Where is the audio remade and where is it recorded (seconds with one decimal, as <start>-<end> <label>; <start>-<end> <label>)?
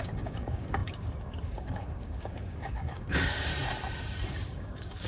0.0-3.5 remade; 3.5-4.3 recorded; 4.3-5.1 remade